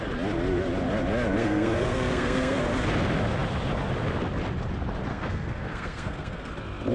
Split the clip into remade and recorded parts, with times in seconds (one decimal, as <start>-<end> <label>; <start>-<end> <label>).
0.0-1.4 recorded; 1.4-2.6 remade; 2.6-5.1 recorded; 5.1-6.5 remade; 6.5-6.9 recorded